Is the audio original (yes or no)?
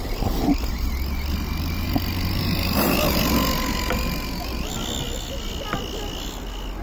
yes